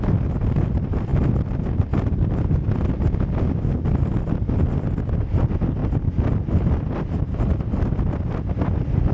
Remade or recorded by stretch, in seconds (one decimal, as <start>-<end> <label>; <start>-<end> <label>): 0.0-9.1 recorded